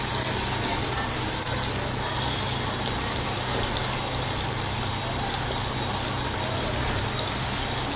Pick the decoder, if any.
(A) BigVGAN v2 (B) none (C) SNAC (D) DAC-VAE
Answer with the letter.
B